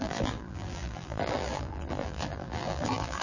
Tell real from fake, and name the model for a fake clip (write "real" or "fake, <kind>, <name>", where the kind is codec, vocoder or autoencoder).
fake, vocoder, BigVGAN v2